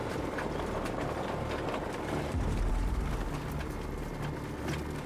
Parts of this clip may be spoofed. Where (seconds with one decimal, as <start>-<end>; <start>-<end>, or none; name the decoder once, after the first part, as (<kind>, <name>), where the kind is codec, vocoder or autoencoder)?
0.0-3.1 (vocoder, BigVGAN v2)